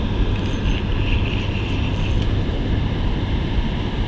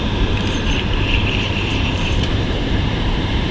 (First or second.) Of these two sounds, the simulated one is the second